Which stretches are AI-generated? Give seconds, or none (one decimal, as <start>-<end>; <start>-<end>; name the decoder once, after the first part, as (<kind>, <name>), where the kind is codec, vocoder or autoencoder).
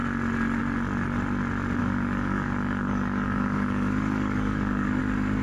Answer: 1.8-5.0 (codec, DAC)